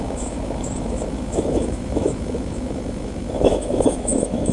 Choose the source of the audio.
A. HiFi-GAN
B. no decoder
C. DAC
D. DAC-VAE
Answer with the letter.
D